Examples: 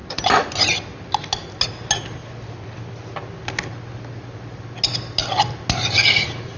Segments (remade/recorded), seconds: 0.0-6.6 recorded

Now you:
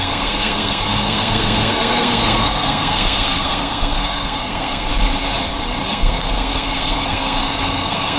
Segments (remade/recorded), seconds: 0.0-4.9 remade; 4.9-5.9 recorded; 5.9-8.2 remade

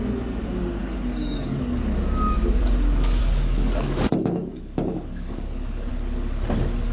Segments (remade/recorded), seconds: 0.0-0.8 recorded; 0.8-1.8 remade; 1.8-3.2 recorded; 3.2-5.9 remade; 5.9-6.9 recorded

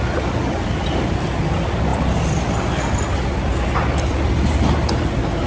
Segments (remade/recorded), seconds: 0.0-5.5 recorded

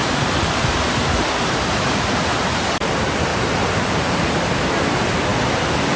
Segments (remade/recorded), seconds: 0.0-2.9 remade; 2.9-3.3 recorded; 3.3-4.5 remade; 4.5-6.0 recorded

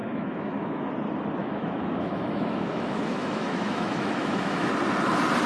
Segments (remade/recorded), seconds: 0.0-0.9 remade; 0.9-1.4 recorded; 1.4-4.7 remade; 4.7-5.5 recorded